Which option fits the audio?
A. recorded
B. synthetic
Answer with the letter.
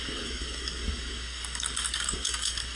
B